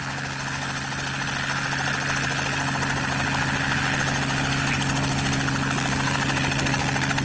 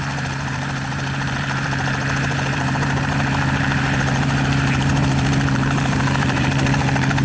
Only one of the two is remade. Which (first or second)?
second